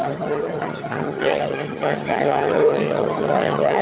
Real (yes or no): no